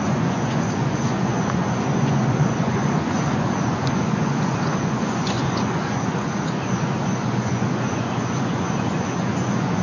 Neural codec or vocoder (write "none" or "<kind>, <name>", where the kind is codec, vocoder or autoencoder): vocoder, Vocos